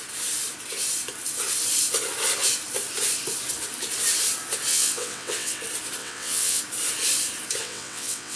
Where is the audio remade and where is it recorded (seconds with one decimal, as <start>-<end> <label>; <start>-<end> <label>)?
0.0-4.7 recorded; 4.7-5.6 remade; 5.6-6.0 recorded; 6.0-6.6 remade; 6.6-7.6 recorded; 7.6-8.4 remade